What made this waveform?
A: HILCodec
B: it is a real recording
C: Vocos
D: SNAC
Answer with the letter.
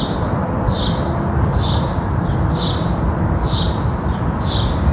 B